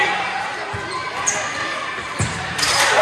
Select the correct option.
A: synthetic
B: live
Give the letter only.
B